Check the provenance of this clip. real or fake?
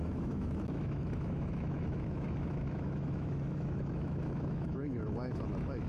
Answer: fake